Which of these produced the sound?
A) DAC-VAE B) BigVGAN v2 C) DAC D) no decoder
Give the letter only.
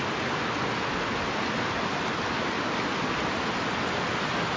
D